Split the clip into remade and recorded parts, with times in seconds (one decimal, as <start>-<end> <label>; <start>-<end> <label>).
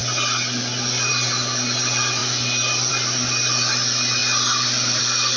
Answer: 0.0-5.4 recorded